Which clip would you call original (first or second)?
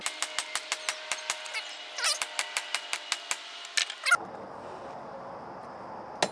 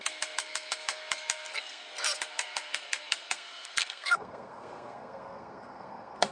first